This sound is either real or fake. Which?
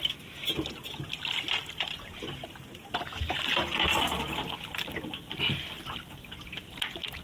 real